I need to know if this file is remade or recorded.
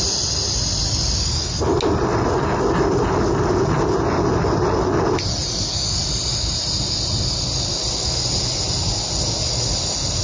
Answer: recorded